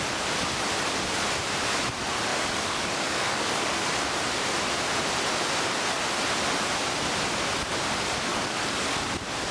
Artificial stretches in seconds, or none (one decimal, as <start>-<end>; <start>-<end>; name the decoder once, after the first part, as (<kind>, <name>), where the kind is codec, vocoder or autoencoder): 2.3-3.9 (codec, DAC); 8.3-9.0